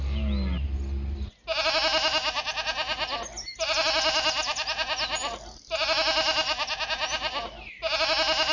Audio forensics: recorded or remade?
recorded